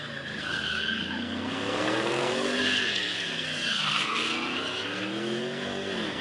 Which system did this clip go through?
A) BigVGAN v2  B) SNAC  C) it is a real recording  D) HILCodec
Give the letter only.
B